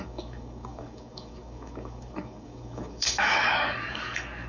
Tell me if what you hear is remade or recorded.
remade